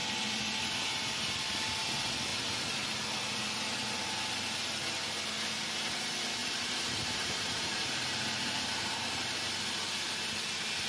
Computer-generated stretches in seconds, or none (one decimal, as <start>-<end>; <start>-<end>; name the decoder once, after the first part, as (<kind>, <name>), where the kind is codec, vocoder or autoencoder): 6.4-9.9 (vocoder, BigVGAN v2)